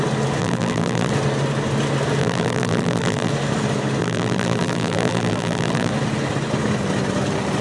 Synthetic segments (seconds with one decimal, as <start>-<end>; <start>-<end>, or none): 0.4-1.1; 2.2-3.3; 4.0-5.9